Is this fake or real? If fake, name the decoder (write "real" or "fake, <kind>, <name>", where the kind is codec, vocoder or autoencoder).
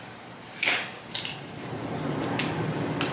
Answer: real